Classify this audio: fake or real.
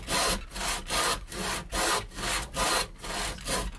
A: real